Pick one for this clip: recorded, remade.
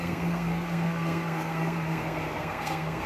remade